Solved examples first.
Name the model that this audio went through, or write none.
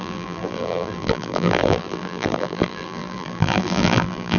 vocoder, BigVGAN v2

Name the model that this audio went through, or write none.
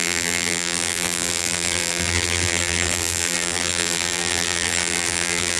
vocoder, BigVGAN v2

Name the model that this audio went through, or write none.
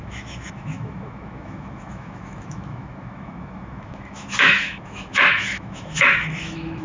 autoencoder, DAC-VAE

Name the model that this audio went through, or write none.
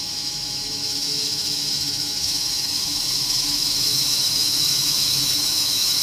autoencoder, DAC-VAE